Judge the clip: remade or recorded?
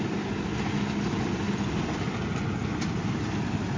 recorded